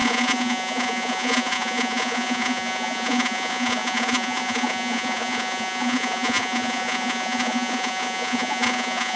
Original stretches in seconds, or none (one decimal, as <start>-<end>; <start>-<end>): none